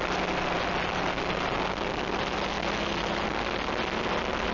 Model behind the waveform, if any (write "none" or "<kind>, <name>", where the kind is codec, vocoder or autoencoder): none